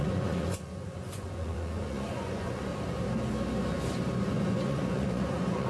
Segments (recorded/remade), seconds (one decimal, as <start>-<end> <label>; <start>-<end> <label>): 0.0-2.7 remade; 2.7-4.3 recorded; 4.3-5.7 remade